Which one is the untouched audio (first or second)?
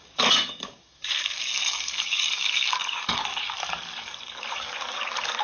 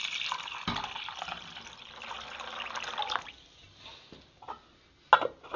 second